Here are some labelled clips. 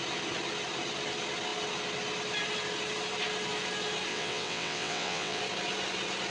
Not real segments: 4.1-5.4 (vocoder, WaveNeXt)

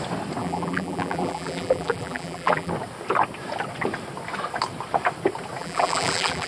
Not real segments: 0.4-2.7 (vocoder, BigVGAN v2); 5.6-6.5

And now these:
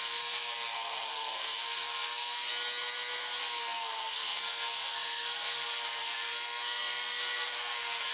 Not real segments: 0.0-2.5 (codec, SNAC); 3.4-8.1

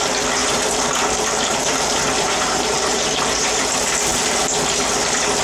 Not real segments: 0.4-3.6 (vocoder, BigVGAN v2)